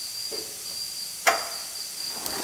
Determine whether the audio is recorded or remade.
recorded